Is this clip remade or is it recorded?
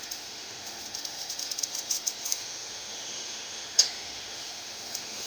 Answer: remade